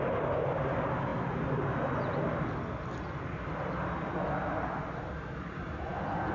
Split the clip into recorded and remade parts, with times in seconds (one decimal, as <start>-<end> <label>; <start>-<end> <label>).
0.0-6.3 recorded